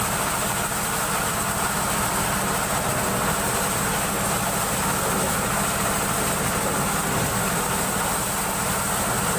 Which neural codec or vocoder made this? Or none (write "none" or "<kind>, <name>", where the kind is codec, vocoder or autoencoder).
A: none